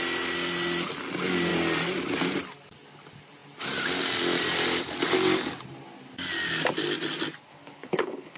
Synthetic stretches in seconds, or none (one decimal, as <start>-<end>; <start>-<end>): 7.5-8.4